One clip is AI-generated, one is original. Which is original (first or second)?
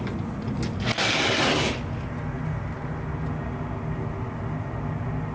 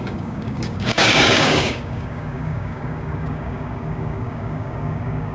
first